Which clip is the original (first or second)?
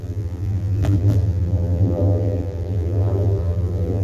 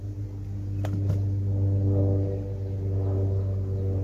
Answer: second